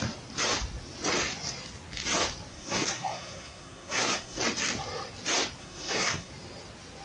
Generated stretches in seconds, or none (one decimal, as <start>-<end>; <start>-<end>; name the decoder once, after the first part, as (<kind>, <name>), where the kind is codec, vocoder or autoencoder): 2.5-4.4 (codec, SNAC); 5.6-6.3